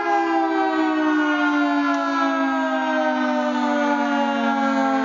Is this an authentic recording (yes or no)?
yes